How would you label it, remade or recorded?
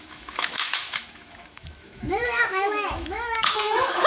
remade